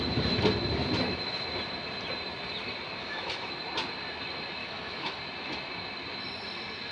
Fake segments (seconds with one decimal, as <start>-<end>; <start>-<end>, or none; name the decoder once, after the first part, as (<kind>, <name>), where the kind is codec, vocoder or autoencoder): 3.0-3.5 (autoencoder, DAC-VAE); 4.6-5.2